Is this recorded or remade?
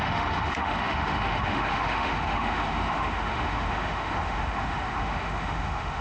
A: remade